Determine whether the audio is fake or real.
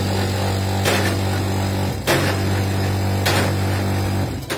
real